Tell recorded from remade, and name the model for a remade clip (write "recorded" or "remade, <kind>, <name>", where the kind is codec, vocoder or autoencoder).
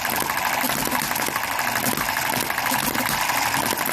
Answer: recorded